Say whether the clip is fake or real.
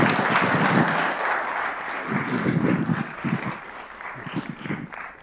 real